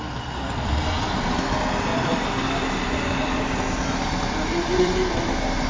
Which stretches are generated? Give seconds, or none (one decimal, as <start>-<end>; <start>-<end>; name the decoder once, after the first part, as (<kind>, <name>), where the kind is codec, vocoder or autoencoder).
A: 1.9-5.3 (vocoder, BigVGAN v2)